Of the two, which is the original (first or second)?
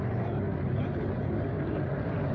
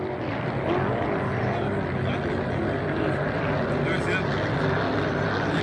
second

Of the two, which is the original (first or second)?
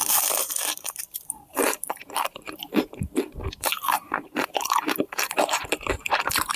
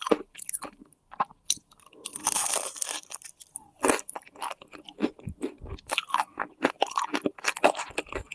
second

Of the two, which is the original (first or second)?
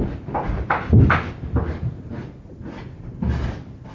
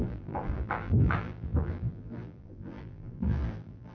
first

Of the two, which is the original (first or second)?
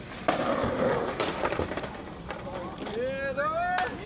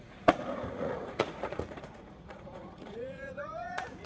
first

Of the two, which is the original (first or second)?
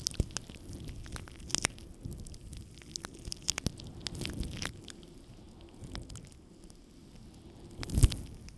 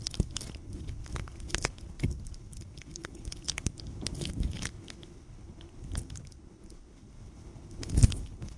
first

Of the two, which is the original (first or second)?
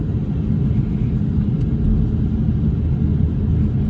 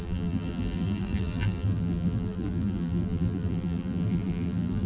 first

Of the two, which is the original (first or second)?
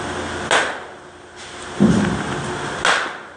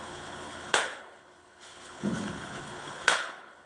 first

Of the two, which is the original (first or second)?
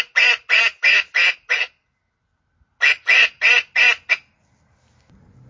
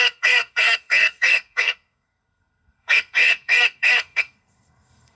first